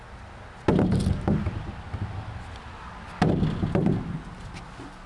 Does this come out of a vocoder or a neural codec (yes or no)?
no